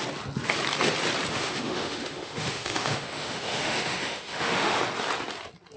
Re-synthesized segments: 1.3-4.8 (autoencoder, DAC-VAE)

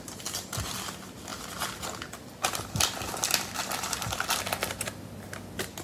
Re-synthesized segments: none

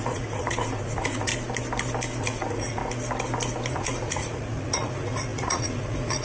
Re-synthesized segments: 0.0-1.3 (vocoder, Vocos); 2.2-2.8; 3.7-6.2

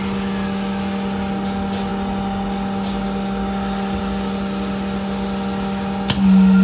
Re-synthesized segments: none

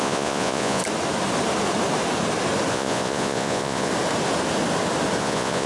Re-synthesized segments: 0.0-0.8 (vocoder, Vocos); 2.7-3.9; 5.2-5.7

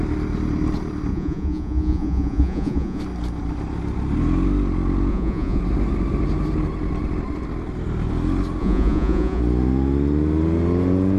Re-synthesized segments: 1.1-3.0 (vocoder, Vocos); 5.1-5.6; 8.6-9.4

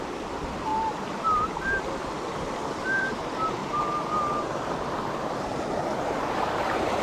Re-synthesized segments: 0.0-3.6 (vocoder, BigVGAN v2); 5.4-7.0